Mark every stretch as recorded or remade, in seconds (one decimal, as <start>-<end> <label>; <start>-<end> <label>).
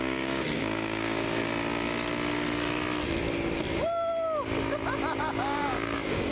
0.0-1.4 remade; 1.4-5.2 recorded; 5.2-6.3 remade